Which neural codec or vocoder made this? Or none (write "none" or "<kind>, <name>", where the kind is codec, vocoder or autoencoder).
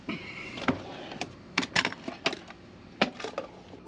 none